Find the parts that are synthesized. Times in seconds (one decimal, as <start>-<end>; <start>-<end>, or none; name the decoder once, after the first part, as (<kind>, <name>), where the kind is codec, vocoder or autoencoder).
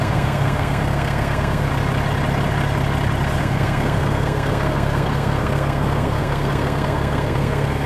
0.0-1.7 (codec, SNAC); 3.4-7.9